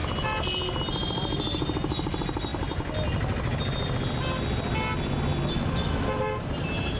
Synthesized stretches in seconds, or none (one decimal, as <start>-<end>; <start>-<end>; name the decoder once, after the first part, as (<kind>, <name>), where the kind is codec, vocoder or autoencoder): none